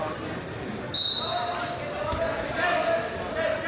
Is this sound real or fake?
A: real